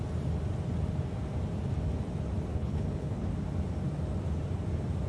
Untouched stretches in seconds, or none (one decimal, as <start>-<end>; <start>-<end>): 0.0-2.5; 3.3-5.1